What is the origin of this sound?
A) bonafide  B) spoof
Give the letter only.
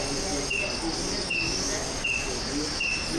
A